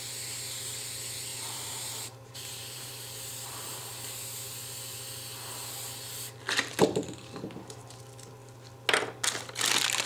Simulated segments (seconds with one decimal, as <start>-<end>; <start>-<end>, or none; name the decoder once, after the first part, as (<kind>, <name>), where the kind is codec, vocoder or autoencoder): 1.3-3.8 (vocoder, BigVGAN v2)